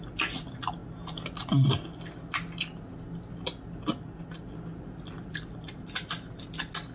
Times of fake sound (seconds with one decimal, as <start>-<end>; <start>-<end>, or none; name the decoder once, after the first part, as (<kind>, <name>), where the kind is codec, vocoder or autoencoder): none